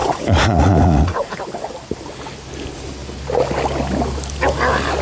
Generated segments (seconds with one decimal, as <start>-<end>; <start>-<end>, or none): 0.0-1.3